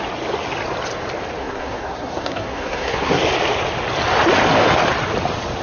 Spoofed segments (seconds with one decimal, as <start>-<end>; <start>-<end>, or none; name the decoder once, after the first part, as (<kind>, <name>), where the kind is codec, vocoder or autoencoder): 1.4-3.2 (codec, SNAC)